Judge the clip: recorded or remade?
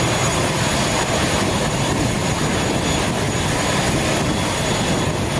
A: recorded